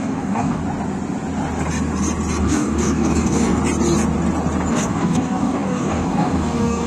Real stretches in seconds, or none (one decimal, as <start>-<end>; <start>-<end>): 0.6-2.4; 3.6-4.7